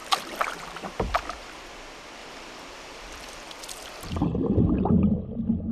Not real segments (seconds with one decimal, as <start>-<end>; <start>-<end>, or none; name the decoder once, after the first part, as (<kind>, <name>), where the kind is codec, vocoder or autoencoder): 0.0-1.7 (vocoder, BigVGAN v2); 2.2-4.7